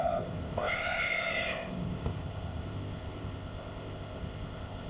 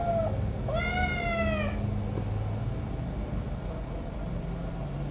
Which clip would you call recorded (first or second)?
second